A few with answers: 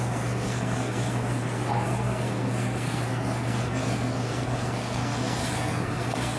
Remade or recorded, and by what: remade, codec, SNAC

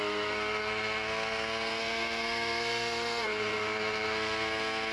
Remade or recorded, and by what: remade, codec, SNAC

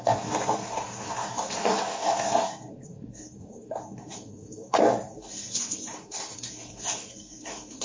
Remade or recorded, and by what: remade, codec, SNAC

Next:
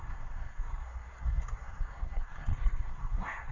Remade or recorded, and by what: remade, codec, SNAC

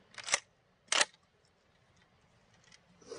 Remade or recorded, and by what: recorded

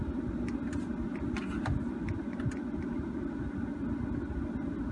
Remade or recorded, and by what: recorded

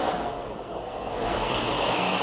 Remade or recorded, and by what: remade, codec, SNAC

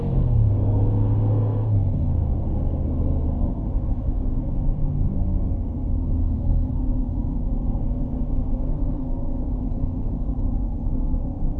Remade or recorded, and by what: remade, codec, SNAC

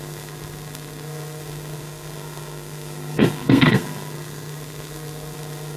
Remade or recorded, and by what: remade, codec, SNAC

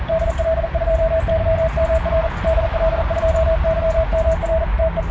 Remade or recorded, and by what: recorded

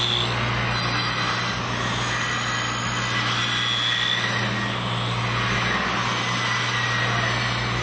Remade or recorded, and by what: recorded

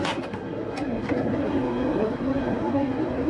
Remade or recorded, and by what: remade, codec, SNAC